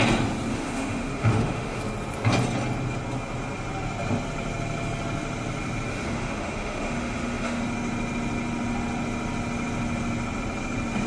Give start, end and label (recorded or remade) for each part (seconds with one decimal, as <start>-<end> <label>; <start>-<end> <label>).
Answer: 0.0-0.5 recorded; 0.5-1.8 remade; 1.8-5.9 recorded; 5.9-7.6 remade; 7.6-11.1 recorded